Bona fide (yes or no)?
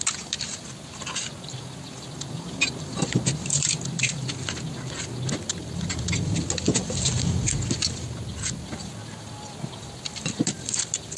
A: yes